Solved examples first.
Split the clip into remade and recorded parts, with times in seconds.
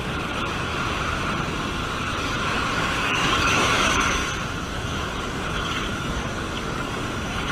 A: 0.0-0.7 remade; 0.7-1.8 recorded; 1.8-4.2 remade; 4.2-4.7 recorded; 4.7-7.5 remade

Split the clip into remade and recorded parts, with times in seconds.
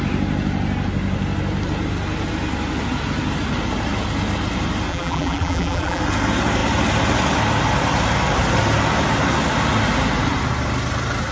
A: 0.0-4.9 recorded; 4.9-6.0 remade; 6.0-11.3 recorded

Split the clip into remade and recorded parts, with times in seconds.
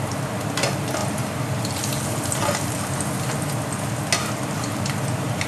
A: 0.0-1.0 recorded; 1.0-3.5 remade; 3.5-5.5 recorded